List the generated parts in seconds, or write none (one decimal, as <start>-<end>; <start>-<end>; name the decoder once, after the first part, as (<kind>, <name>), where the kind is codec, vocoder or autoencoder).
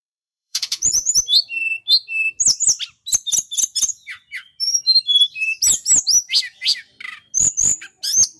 0.0-1.1 (vocoder, Vocos)